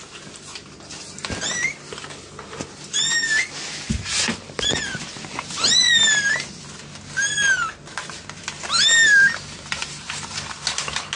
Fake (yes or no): no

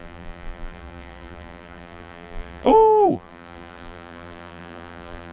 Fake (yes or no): yes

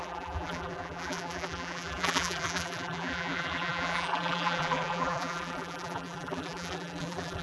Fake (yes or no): yes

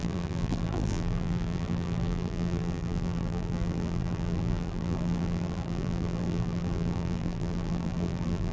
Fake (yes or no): yes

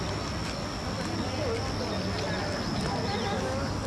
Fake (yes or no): no